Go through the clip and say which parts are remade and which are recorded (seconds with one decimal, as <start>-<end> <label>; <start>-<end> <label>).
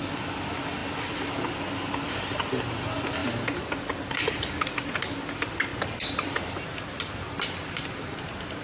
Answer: 0.0-8.6 recorded